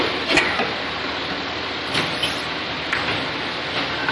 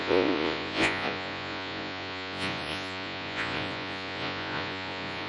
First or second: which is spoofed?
second